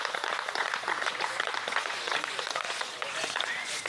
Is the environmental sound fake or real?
fake